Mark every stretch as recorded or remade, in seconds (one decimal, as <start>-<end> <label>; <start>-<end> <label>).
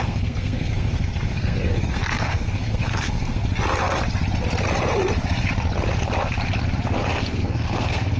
0.0-3.4 remade; 3.4-7.2 recorded; 7.2-8.2 remade